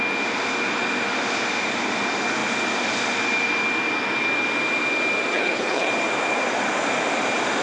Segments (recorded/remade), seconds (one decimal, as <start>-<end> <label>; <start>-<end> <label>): 0.0-5.3 recorded; 5.3-5.9 remade; 5.9-7.6 recorded